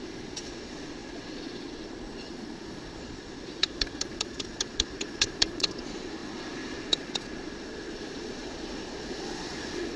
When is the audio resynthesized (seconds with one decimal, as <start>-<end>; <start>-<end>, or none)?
0.0-10.0